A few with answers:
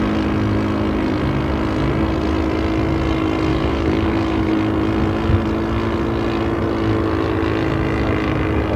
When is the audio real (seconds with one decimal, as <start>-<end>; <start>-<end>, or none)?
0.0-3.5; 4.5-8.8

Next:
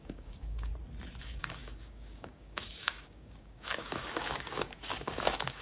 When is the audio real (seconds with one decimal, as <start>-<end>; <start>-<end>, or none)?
0.7-1.2

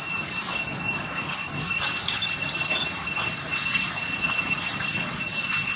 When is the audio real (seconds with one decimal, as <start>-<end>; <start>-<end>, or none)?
2.2-5.8

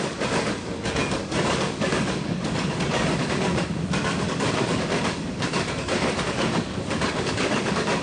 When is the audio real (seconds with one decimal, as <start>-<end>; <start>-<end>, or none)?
none

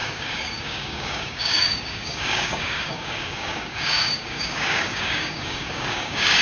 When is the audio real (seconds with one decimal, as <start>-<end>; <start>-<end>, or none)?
none

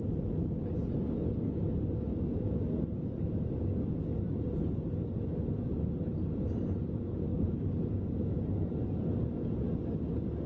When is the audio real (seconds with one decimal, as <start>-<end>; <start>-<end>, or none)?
0.0-7.3; 8.4-10.5

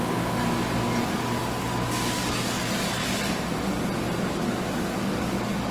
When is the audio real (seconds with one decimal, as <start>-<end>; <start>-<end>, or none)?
0.4-1.0; 3.0-4.3

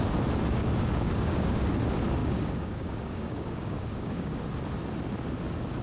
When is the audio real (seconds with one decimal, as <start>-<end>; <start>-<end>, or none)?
0.0-0.6; 1.7-2.2; 4.4-5.8